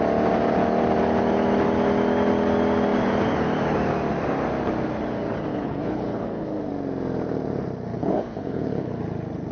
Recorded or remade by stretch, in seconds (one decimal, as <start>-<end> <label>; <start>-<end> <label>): 0.0-5.5 recorded; 5.5-6.7 remade; 6.7-7.9 recorded; 7.9-9.0 remade; 9.0-9.5 recorded